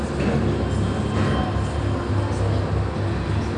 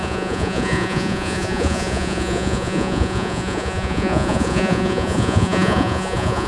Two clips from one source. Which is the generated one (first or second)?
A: second